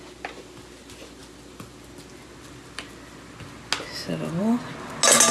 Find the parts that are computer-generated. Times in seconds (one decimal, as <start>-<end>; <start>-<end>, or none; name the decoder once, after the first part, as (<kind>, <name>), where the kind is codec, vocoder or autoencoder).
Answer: none